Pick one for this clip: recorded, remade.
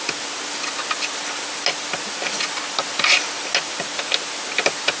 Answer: recorded